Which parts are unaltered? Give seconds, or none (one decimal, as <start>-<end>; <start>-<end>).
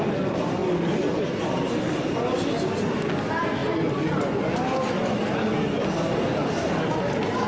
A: 0.0-3.6; 5.2-6.4; 6.9-7.5